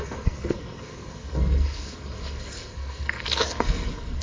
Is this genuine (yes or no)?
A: no